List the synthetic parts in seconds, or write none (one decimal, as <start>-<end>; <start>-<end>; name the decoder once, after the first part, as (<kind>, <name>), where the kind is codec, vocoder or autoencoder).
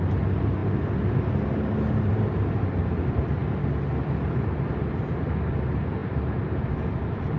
none